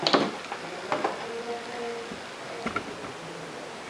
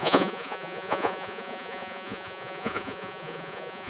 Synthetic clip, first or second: second